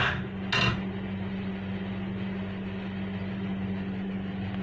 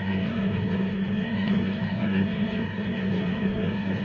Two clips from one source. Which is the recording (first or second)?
first